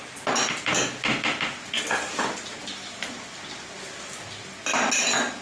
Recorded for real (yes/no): yes